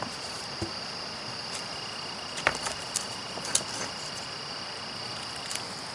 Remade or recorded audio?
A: remade